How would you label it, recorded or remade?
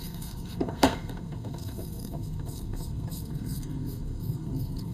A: remade